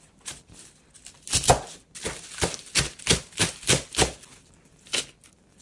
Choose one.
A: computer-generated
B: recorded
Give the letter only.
B